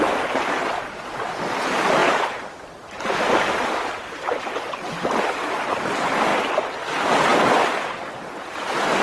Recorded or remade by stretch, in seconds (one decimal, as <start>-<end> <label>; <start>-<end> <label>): 0.0-9.0 recorded